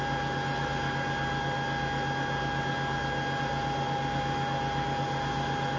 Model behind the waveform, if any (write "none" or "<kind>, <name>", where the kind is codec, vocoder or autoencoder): none